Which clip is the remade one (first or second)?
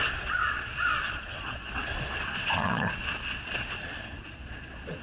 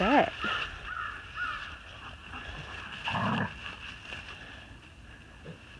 first